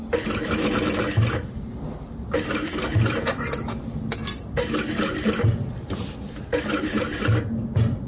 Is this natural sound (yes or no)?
yes